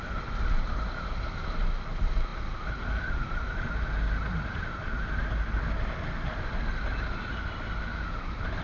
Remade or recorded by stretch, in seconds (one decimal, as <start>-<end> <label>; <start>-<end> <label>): 0.0-8.6 recorded